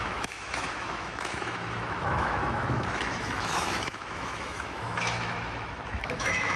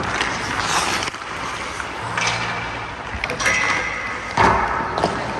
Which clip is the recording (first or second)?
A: second